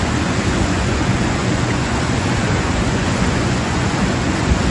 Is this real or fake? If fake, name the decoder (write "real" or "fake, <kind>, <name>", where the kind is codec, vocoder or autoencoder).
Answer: fake, vocoder, Vocos